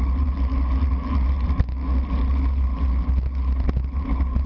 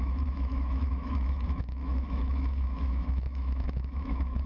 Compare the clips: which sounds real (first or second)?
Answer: first